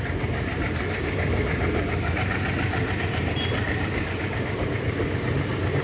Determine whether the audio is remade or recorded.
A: remade